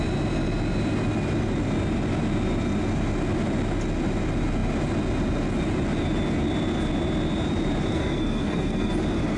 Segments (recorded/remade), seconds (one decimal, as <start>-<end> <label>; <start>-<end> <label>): 0.0-7.9 recorded; 7.9-8.9 remade; 8.9-9.4 recorded